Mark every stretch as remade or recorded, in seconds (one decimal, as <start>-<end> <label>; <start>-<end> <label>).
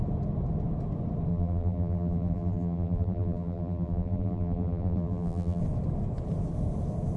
0.0-1.3 recorded; 1.3-5.6 remade; 5.6-7.2 recorded